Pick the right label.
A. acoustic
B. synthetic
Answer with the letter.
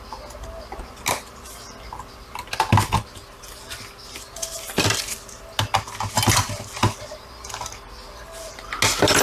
A